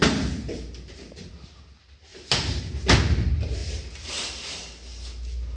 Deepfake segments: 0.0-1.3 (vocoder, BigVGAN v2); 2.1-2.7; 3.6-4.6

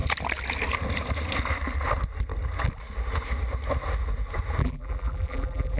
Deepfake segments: 4.6-5.8 (vocoder, BigVGAN v2)

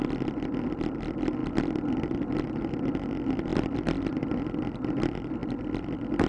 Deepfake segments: 1.4-2.7 (vocoder, BigVGAN v2); 3.5-4.2

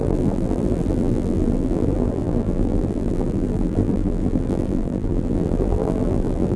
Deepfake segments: 0.0-6.6 (vocoder, BigVGAN v2)